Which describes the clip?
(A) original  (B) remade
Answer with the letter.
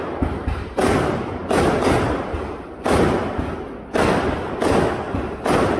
B